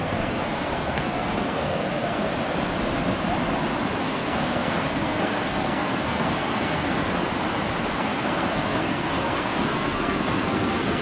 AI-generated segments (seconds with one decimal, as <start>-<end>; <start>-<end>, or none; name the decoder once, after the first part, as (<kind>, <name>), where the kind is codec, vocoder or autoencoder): 0.0-2.3 (codec, SNAC); 4.0-7.3; 7.9-11.0